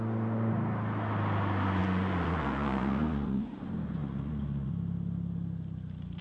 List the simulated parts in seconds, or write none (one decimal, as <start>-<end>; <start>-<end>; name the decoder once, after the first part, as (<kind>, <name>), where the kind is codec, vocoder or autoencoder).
1.8-3.6 (vocoder, Vocos); 4.0-4.7